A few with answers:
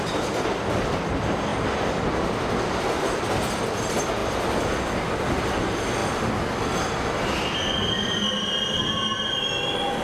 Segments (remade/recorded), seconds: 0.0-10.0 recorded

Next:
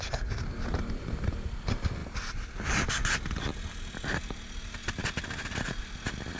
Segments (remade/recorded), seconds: 0.0-6.4 remade

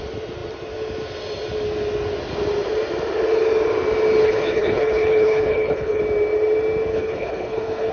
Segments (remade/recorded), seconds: 0.0-4.2 recorded; 4.2-6.0 remade; 6.0-6.9 recorded; 6.9-7.9 remade

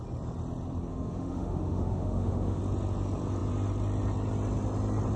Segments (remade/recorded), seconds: 0.0-0.9 recorded; 0.9-2.6 remade; 2.6-5.2 recorded

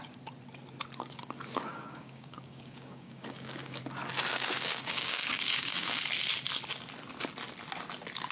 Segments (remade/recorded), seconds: 0.0-1.7 recorded; 1.7-3.8 remade; 3.8-4.3 recorded; 4.3-6.0 remade; 6.0-8.3 recorded

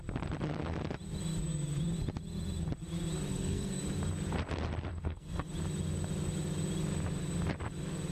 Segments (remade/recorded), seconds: 0.0-3.3 recorded; 3.3-3.8 remade; 3.8-4.9 recorded; 4.9-5.5 remade; 5.5-8.1 recorded

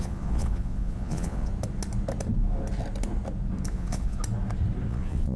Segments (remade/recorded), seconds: 0.0-1.5 remade; 1.5-3.7 recorded; 3.7-4.2 remade; 4.2-4.9 recorded; 4.9-5.4 remade

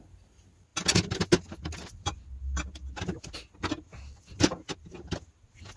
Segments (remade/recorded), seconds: 0.0-5.8 recorded